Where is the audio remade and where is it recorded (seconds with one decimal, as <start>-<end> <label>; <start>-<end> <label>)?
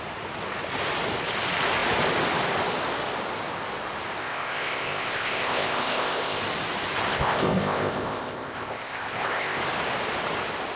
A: 0.0-4.2 recorded; 4.2-6.4 remade; 6.4-7.1 recorded; 7.1-9.6 remade; 9.6-10.8 recorded